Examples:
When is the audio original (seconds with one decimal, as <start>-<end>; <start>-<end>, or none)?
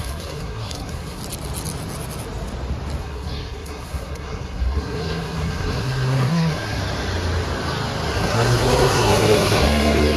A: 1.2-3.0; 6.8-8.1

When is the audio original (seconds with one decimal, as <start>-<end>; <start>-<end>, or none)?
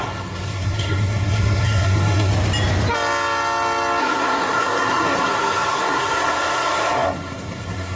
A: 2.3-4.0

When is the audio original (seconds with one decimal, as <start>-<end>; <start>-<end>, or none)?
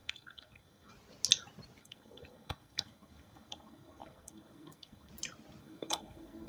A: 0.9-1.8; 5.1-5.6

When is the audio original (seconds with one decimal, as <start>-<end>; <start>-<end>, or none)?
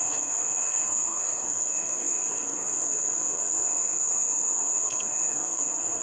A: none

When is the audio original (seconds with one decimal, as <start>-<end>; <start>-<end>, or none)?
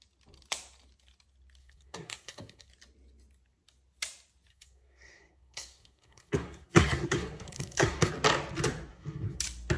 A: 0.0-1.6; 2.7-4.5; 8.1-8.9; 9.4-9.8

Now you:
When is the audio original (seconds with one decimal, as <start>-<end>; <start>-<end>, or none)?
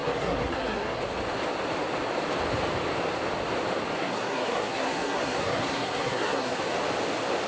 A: 1.0-4.0; 6.6-7.5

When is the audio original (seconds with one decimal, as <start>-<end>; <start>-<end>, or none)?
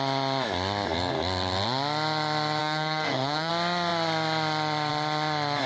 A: 0.0-2.6; 3.5-5.7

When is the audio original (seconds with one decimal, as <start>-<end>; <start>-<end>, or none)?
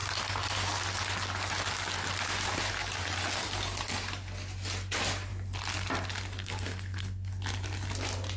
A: 0.0-6.4; 7.3-8.4